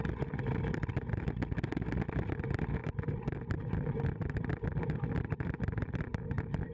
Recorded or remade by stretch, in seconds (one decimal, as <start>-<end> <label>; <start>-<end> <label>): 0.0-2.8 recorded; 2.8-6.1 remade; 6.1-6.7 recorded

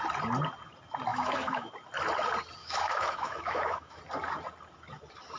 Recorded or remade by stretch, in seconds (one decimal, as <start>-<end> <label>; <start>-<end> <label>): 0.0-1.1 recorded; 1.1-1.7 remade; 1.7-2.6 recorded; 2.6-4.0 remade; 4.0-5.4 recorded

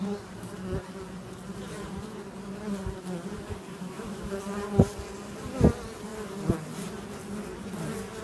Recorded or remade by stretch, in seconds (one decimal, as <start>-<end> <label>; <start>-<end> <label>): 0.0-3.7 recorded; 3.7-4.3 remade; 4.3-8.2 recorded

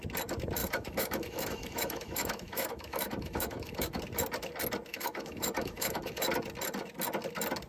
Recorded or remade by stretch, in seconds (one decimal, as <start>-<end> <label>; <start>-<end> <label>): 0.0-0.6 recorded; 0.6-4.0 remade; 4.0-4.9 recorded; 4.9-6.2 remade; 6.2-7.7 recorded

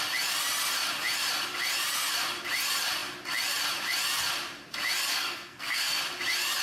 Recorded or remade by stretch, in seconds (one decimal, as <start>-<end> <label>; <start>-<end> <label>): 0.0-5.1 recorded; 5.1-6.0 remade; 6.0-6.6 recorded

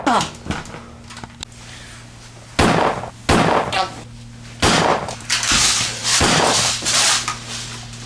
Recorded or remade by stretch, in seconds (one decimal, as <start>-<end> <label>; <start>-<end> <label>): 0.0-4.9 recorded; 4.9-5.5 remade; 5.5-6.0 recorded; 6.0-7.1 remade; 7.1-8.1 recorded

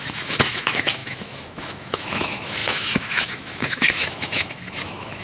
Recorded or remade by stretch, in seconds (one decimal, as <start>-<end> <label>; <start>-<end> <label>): 0.0-5.2 remade

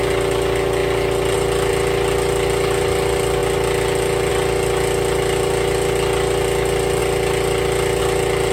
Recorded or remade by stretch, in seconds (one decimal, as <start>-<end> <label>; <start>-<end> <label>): 0.0-8.5 recorded